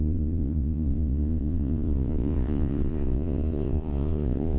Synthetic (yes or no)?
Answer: yes